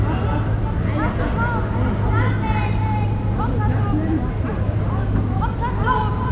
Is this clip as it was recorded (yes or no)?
yes